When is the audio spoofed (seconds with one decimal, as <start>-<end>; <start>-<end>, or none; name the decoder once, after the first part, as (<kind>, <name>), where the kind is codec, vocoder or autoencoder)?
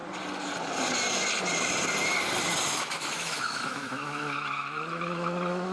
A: 2.7-5.7 (autoencoder, DAC-VAE)